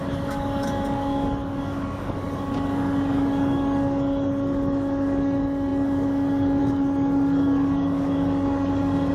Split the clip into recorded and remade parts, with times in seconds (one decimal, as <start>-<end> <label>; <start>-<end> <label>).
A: 0.0-9.1 remade